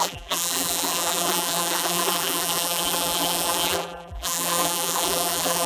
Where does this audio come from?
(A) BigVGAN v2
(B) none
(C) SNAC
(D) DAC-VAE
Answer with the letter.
A